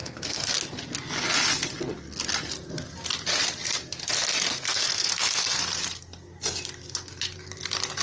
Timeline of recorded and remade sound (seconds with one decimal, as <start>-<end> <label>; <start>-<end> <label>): 0.0-0.5 remade; 0.5-4.5 recorded; 4.5-5.6 remade; 5.6-8.0 recorded